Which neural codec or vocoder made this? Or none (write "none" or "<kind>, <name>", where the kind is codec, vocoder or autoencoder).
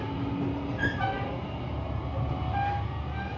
none